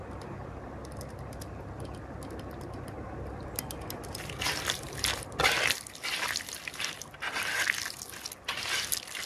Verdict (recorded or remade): recorded